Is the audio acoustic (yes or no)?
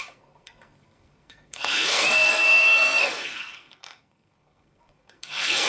no